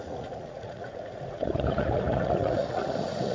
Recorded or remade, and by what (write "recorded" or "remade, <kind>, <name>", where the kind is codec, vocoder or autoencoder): remade, vocoder, Vocos